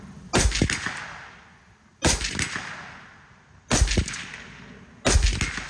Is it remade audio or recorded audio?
recorded